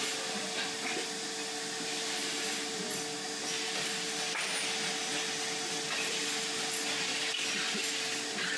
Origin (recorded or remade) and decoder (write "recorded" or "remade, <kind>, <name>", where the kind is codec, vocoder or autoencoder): recorded